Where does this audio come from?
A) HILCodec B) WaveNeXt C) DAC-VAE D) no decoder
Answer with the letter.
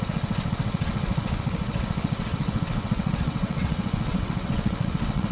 B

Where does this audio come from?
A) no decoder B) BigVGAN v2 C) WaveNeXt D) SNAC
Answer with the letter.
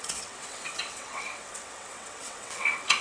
C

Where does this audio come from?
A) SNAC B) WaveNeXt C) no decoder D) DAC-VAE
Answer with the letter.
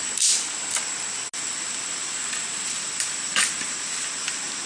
C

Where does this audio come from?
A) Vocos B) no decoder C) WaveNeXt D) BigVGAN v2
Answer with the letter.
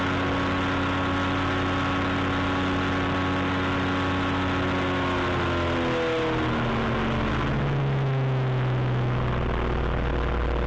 B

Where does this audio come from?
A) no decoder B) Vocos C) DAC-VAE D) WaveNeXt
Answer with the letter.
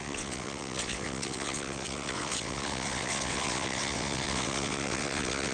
D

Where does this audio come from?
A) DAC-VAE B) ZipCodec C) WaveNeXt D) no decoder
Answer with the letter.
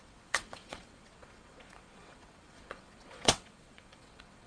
C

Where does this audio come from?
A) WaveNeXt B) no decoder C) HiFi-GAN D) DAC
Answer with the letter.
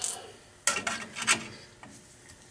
B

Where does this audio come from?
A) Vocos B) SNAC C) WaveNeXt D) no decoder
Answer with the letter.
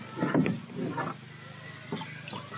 D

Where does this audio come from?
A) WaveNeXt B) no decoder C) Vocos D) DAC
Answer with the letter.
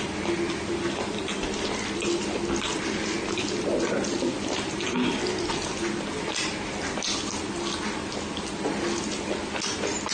B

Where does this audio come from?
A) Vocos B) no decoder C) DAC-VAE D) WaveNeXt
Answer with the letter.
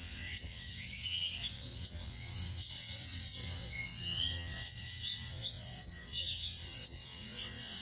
D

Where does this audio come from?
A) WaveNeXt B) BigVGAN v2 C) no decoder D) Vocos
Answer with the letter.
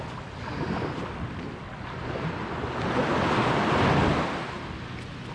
C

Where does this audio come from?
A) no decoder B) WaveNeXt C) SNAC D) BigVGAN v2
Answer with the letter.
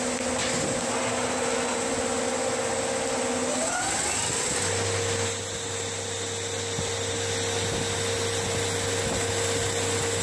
A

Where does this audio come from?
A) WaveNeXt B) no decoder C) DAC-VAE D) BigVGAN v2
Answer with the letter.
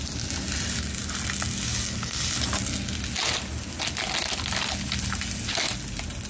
B